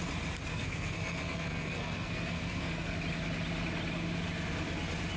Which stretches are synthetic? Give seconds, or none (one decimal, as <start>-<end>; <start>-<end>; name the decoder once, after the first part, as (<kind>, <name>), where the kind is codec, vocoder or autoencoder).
0.5-2.9 (codec, SNAC)